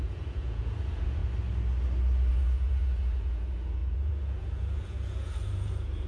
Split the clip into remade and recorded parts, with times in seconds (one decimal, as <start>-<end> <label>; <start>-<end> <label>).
0.0-1.2 remade; 1.2-2.3 recorded; 2.3-6.1 remade